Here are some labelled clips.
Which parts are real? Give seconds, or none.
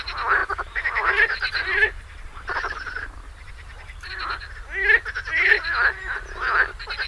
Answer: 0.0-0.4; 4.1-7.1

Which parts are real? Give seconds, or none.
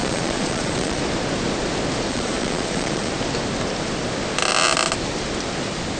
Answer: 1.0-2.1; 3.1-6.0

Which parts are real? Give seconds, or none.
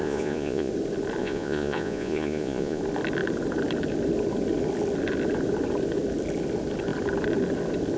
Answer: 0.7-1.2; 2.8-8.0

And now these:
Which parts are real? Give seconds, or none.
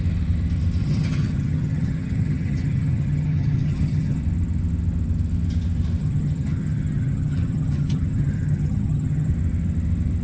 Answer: 0.0-0.8; 4.2-6.0; 9.3-10.2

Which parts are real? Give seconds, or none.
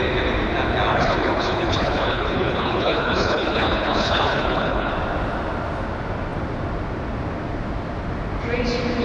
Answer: 0.0-0.9; 4.9-9.0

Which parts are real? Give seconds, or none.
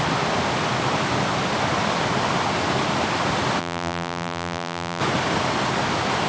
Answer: 0.0-3.6; 5.0-6.3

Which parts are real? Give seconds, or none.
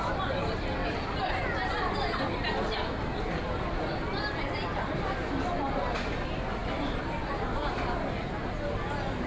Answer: 0.0-9.3